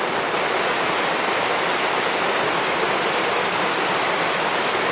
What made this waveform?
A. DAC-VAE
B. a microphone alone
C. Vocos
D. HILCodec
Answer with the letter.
B